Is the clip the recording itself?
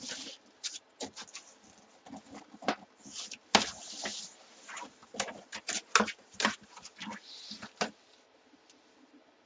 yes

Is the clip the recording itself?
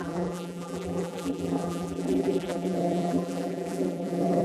no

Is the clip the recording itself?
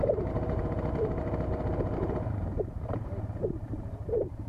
no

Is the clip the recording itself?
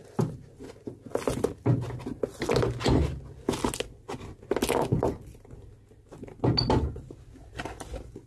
yes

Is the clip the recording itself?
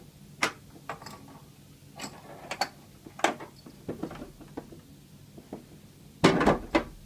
yes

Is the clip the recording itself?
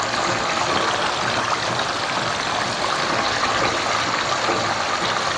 yes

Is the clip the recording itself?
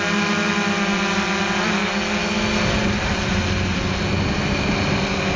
yes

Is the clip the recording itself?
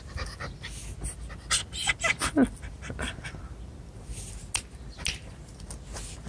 yes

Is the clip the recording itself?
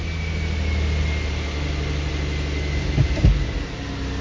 yes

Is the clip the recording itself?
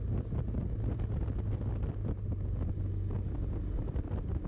yes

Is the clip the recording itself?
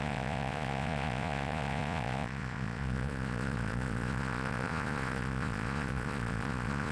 no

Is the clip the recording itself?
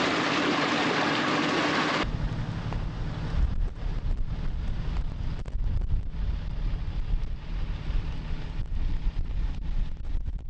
yes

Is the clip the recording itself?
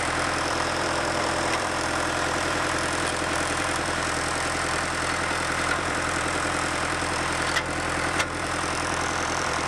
no